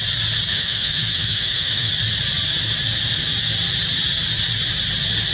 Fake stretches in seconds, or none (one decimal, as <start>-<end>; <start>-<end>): 0.5-1.9